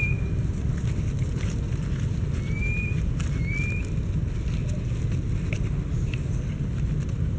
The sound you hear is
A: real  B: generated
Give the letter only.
A